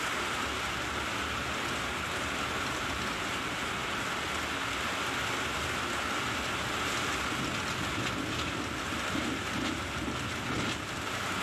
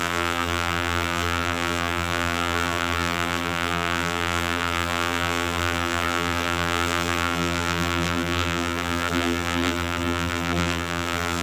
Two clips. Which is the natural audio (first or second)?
first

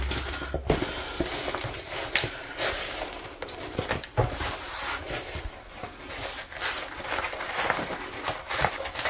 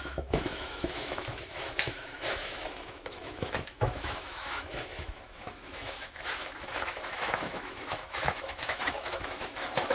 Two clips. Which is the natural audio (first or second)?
first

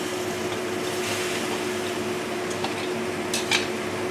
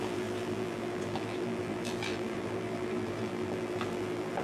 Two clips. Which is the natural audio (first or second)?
first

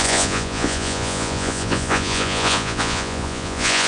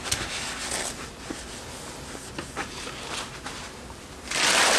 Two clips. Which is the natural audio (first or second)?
second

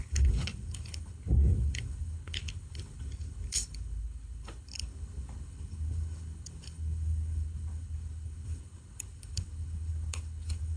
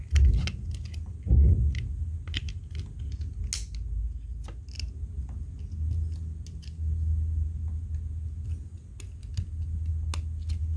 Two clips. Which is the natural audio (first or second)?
second